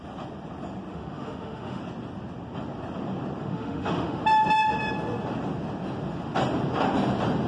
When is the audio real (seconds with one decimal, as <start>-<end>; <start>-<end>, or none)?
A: 0.0-0.9; 1.8-3.4; 4.2-7.5